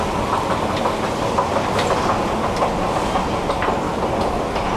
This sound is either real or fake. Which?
real